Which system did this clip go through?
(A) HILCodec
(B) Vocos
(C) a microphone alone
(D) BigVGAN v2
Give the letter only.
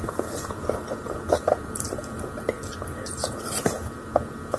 D